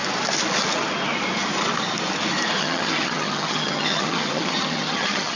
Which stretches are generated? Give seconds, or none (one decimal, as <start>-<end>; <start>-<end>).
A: 2.6-5.4